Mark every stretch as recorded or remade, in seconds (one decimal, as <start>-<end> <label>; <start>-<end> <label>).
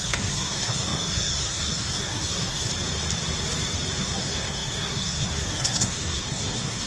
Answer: 0.0-2.7 remade; 2.7-4.0 recorded; 4.0-6.9 remade